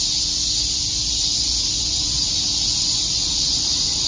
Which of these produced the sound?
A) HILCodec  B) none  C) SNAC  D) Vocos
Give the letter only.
B